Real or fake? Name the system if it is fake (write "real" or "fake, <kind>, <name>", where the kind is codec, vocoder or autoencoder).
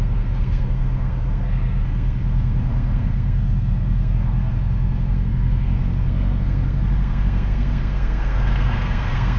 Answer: fake, codec, SNAC